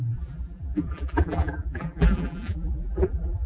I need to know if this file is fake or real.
fake